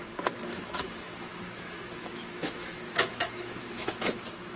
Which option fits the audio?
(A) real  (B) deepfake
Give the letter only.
B